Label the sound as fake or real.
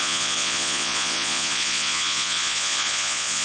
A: fake